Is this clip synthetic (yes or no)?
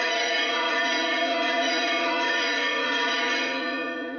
yes